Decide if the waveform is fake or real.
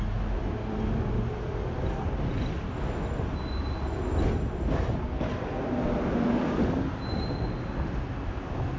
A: real